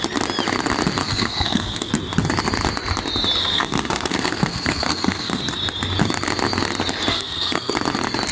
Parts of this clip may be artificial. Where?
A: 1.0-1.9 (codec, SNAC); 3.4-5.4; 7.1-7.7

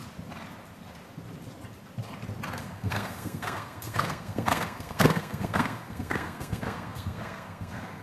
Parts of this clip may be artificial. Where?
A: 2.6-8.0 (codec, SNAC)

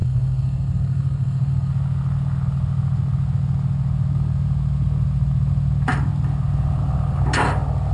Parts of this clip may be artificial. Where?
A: 0.0-1.7 (codec, SNAC)

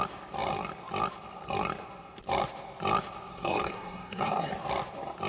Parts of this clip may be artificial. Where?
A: 3.3-4.5 (codec, SNAC)